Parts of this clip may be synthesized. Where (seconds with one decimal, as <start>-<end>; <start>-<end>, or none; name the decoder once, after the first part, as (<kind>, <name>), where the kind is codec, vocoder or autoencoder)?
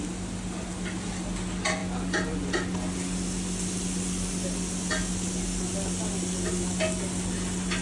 none